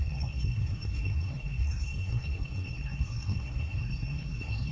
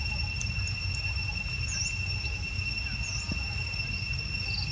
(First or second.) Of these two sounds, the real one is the second